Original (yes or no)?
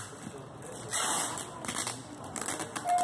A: yes